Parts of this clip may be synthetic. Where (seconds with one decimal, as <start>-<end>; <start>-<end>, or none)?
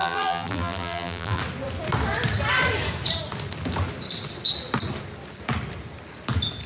0.0-1.4